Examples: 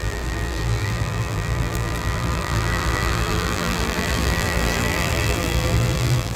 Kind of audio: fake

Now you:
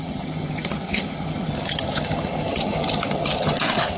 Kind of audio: fake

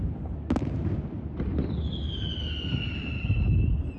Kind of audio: real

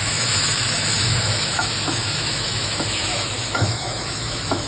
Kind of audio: fake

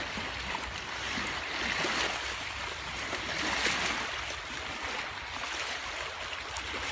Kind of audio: real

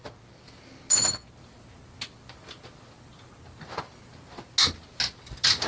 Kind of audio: real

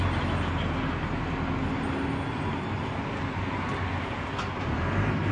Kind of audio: real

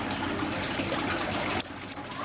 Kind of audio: real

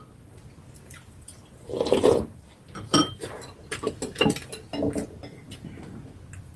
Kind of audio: real